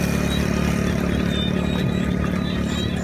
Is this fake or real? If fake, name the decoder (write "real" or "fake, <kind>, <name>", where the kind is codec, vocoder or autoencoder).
real